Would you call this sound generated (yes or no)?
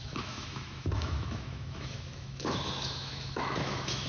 yes